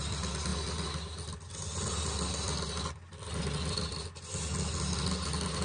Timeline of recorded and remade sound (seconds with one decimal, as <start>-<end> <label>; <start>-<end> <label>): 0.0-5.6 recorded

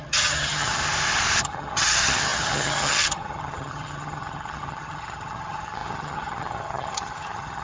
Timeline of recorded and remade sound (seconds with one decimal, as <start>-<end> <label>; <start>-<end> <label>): 0.0-0.8 remade; 0.8-1.4 recorded; 1.4-7.6 remade

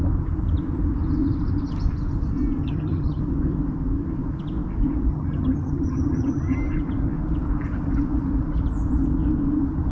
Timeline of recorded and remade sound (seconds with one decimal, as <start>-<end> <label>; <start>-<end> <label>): 0.0-2.6 recorded; 2.6-3.2 remade; 3.2-5.1 recorded; 5.1-6.6 remade; 6.6-9.9 recorded

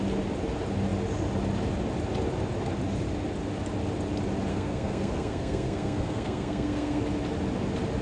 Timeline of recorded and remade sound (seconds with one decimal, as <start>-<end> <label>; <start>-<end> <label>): 0.0-4.5 recorded; 4.5-7.0 remade; 7.0-8.0 recorded

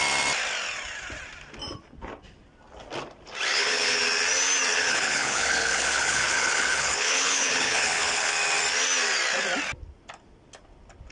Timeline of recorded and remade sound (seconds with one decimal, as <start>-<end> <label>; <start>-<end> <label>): 0.0-3.5 recorded; 3.5-4.0 remade; 4.0-4.7 recorded; 4.7-8.3 remade; 8.3-11.1 recorded

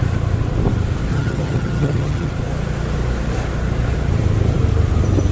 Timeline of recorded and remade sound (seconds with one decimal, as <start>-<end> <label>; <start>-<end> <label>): 0.0-1.1 recorded; 1.1-2.3 remade; 2.3-5.3 recorded

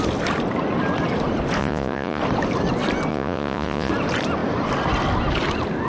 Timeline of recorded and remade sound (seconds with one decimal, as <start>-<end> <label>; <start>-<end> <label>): 0.0-1.6 recorded; 1.6-2.2 remade; 2.2-3.1 recorded; 3.1-3.9 remade; 3.9-5.9 recorded